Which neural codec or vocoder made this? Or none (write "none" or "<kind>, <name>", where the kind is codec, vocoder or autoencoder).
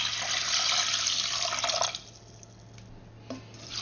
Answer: none